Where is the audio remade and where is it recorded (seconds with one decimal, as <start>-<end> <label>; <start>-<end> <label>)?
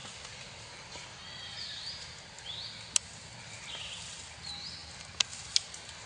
0.0-6.1 recorded